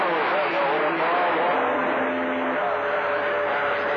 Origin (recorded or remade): recorded